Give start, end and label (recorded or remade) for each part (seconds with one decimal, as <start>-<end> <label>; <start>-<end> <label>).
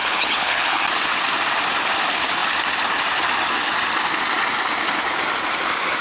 0.0-0.8 remade; 0.8-6.0 recorded